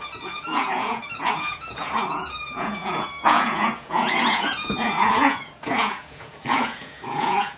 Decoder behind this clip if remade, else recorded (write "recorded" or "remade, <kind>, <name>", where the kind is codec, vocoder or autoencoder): remade, vocoder, Vocos